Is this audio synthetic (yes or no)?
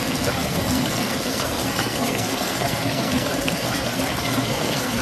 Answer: yes